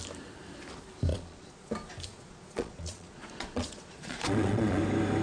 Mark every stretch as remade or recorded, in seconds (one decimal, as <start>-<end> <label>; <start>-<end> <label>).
0.0-1.1 recorded; 1.1-1.7 remade; 1.7-2.1 recorded; 2.1-4.8 remade; 4.8-5.2 recorded